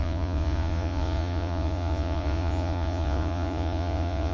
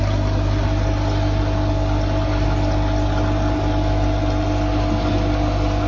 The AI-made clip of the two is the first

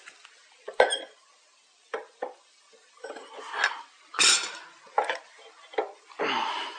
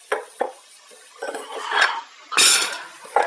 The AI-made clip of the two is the second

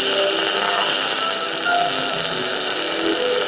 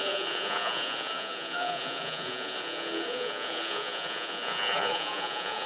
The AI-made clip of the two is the second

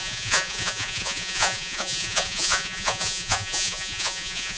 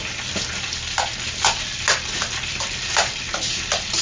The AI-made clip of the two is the first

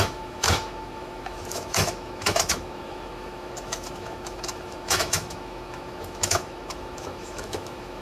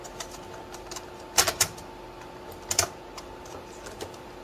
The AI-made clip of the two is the first